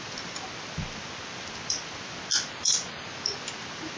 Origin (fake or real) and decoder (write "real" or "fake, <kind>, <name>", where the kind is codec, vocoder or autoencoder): real